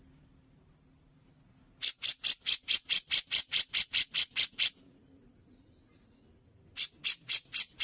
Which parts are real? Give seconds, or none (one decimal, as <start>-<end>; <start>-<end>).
0.0-7.8